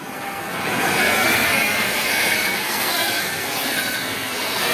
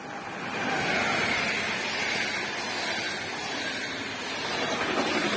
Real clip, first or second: second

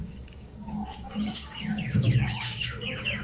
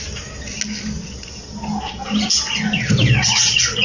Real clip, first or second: second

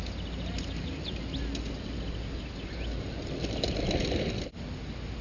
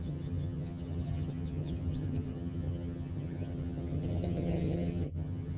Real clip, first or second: first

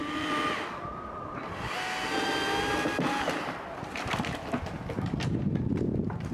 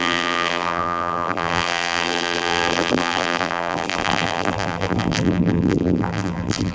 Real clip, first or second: first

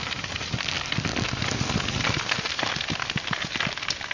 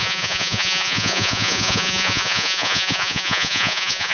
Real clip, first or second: first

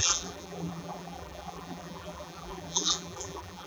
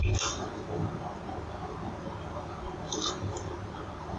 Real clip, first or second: second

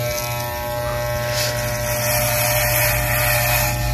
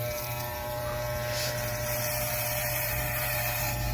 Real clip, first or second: first